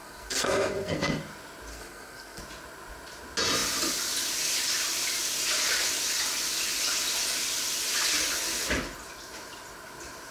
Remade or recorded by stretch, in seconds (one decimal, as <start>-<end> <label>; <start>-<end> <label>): 0.0-1.2 remade; 1.2-1.7 recorded; 1.7-2.4 remade; 2.4-10.3 recorded